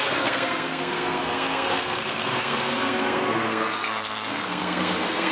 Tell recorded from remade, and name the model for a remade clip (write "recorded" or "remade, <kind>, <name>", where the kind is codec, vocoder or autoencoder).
remade, codec, SNAC